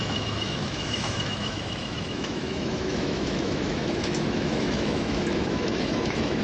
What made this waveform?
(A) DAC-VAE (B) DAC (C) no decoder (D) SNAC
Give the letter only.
A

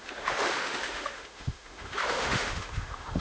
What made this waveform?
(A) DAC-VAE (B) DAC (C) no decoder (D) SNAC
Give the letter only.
A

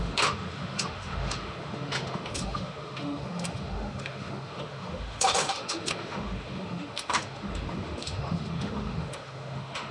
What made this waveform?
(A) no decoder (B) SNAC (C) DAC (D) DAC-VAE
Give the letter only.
D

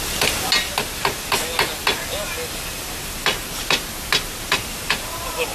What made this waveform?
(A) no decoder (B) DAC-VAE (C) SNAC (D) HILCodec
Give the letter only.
A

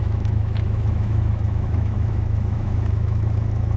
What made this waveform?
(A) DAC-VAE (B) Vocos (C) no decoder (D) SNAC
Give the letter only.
A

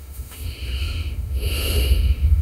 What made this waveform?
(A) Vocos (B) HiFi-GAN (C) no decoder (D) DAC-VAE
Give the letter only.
D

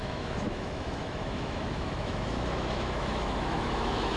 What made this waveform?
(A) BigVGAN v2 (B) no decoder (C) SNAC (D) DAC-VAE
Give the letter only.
D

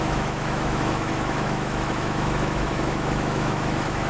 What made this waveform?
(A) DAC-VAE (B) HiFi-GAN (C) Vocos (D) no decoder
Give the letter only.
A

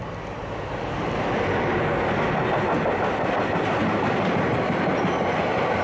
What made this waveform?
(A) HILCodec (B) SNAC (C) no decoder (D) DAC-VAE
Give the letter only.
C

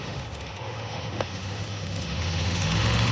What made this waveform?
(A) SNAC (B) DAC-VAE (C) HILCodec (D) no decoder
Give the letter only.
B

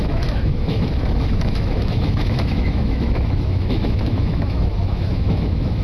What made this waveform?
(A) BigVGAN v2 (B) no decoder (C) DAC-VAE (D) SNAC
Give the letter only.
C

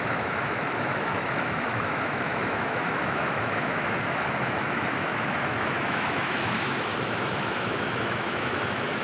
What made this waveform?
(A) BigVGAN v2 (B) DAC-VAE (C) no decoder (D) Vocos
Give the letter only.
B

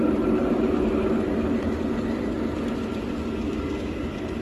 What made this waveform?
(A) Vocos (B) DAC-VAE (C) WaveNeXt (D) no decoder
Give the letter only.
D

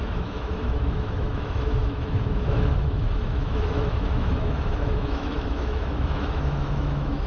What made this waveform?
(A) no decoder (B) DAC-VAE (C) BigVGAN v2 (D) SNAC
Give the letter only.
B